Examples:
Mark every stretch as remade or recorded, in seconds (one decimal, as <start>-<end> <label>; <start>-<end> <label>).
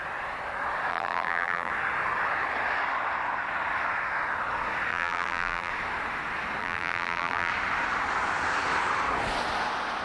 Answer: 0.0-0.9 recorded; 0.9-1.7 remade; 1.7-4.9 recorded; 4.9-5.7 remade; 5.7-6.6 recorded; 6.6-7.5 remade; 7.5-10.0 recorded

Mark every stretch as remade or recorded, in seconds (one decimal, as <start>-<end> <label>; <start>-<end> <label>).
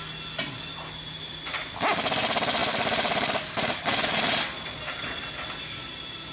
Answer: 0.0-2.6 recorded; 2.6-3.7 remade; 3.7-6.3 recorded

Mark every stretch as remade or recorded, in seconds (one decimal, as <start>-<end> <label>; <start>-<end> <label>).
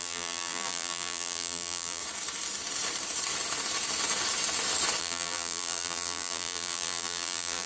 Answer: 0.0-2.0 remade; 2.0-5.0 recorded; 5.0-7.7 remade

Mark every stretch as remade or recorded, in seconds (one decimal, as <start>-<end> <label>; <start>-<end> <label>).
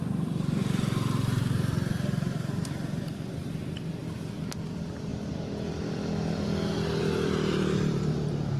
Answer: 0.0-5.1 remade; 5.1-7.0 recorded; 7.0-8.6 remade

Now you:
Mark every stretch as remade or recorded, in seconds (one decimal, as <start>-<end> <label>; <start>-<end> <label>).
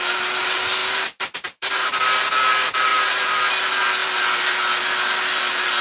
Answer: 0.0-0.8 recorded; 0.8-2.0 remade; 2.0-4.0 recorded; 4.0-4.5 remade; 4.5-5.8 recorded